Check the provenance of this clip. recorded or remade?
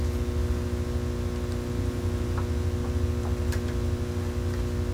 recorded